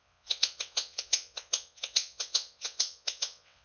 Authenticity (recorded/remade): remade